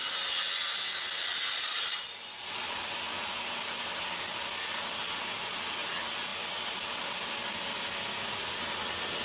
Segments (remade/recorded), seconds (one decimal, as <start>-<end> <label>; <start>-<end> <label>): 0.0-9.2 recorded